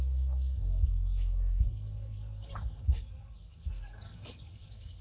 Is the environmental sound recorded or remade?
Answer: remade